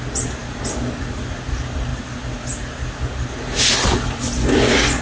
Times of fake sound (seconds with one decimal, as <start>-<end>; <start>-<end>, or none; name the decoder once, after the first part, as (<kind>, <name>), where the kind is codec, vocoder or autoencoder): none